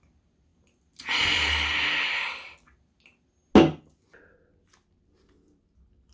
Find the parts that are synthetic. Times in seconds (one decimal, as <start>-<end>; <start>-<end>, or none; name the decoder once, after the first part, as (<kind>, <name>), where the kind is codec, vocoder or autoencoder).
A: none